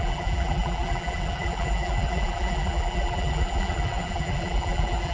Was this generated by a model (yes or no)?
yes